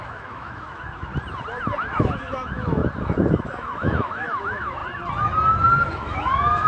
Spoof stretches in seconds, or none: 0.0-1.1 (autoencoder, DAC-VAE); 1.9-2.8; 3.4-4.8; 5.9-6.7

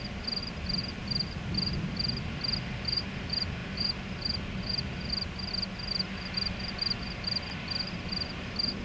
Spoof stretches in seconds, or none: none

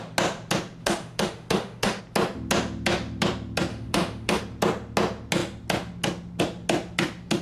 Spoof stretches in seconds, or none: 0.8-2.0 (autoencoder, DAC-VAE); 3.7-4.4

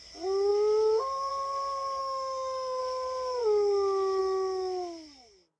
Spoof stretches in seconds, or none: 2.0-2.8 (autoencoder, DAC-VAE)